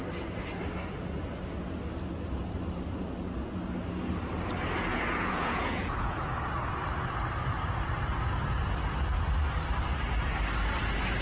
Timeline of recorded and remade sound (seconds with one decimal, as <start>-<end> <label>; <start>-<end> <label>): 0.0-4.9 recorded; 4.9-6.2 remade; 6.2-11.2 recorded